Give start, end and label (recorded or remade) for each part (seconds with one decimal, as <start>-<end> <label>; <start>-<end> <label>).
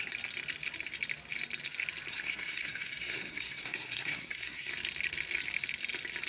0.0-2.1 recorded; 2.1-4.7 remade; 4.7-6.3 recorded